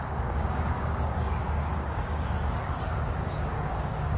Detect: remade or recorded remade